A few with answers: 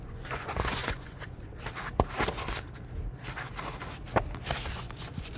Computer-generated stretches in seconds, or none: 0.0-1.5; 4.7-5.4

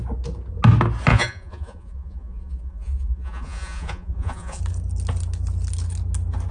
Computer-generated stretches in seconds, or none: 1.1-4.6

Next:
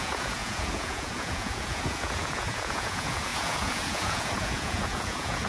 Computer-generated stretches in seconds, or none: 0.0-5.5

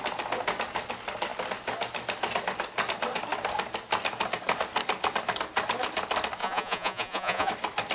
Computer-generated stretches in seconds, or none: 6.4-7.5

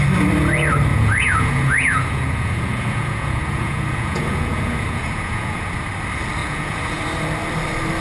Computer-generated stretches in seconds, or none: 0.9-5.7; 6.4-7.0

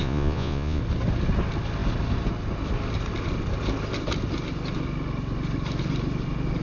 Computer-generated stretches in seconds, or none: 0.0-0.8

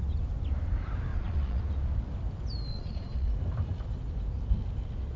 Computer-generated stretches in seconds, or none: 1.1-1.6; 2.7-3.3